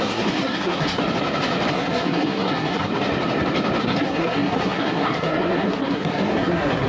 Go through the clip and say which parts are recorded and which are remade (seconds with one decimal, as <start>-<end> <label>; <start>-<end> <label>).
0.0-1.0 remade; 1.0-1.7 recorded; 1.7-2.9 remade; 2.9-3.8 recorded; 3.8-6.9 remade